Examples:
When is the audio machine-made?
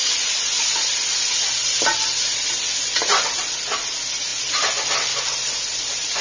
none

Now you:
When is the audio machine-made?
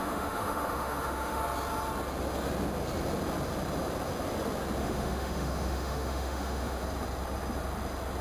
0.0-1.4; 4.8-6.8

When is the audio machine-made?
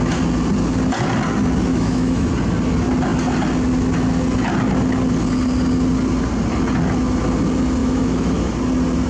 1.7-2.3; 7.8-8.5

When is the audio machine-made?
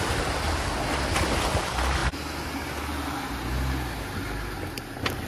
none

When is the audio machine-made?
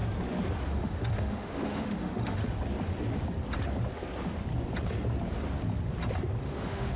0.7-2.4; 6.4-7.0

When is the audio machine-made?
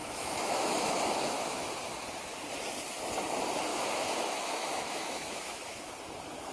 0.0-1.7; 3.7-5.9